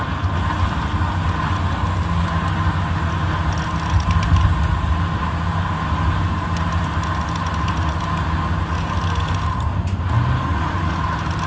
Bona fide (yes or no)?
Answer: yes